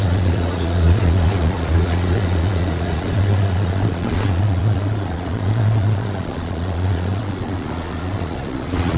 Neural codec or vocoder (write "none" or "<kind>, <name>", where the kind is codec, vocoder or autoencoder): vocoder, Vocos